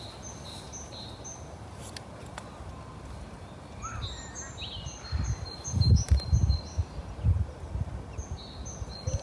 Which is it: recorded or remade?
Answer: recorded